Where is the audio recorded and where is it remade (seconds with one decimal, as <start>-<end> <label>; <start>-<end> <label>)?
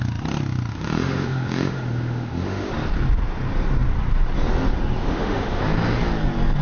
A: 0.0-0.7 recorded; 0.7-2.7 remade; 2.7-5.0 recorded; 5.0-5.6 remade; 5.6-6.6 recorded